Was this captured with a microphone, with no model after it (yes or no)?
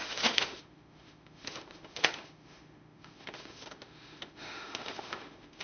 no